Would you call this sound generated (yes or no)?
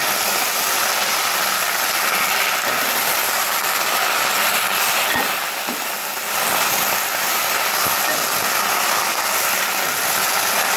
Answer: no